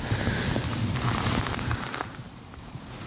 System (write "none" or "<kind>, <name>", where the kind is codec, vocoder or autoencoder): vocoder, BigVGAN v2